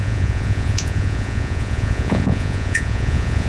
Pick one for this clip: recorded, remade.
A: remade